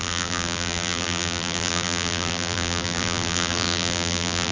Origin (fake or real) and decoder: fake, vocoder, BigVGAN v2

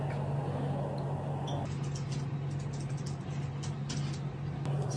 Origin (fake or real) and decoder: real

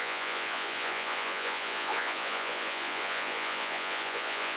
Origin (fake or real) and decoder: fake, vocoder, Vocos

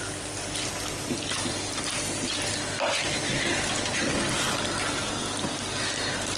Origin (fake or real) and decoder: real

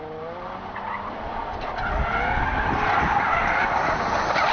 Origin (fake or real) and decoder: real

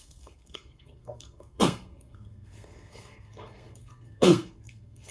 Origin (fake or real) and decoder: fake, codec, SNAC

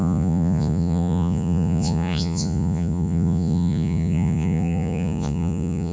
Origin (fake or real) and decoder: fake, vocoder, Vocos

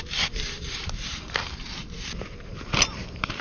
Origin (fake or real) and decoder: fake, vocoder, BigVGAN v2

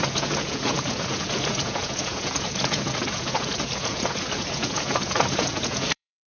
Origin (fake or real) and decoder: fake, vocoder, Vocos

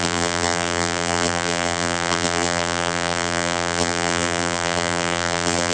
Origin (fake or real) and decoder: fake, vocoder, BigVGAN v2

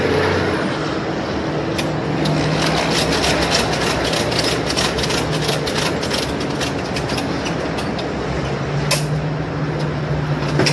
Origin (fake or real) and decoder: real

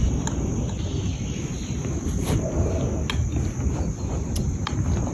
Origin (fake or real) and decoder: real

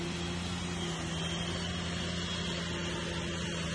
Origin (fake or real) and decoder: real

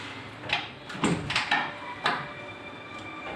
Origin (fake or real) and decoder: real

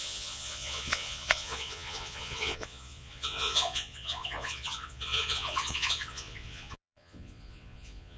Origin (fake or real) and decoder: fake, vocoder, Vocos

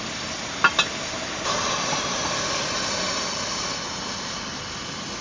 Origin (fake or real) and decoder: real